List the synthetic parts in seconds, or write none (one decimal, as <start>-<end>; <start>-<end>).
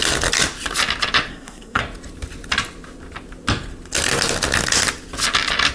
1.3-1.8